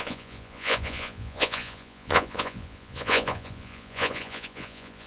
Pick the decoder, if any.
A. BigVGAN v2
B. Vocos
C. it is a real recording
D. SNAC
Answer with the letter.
B